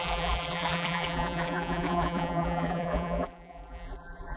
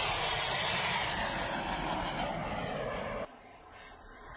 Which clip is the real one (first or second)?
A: second